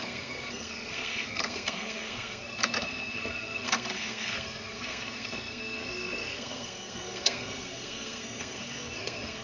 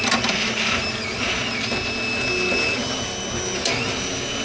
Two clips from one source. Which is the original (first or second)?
second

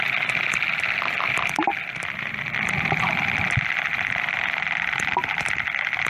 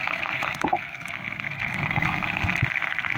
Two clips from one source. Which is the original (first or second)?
first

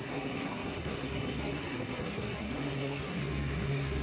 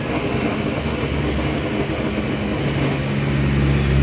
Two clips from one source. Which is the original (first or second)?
second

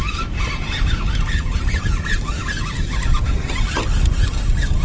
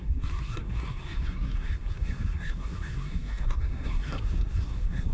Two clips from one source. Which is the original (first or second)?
first